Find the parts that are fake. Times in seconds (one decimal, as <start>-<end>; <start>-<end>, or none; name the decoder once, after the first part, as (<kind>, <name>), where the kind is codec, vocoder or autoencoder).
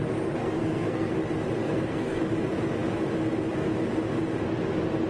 0.4-1.1 (codec, SNAC); 1.6-2.2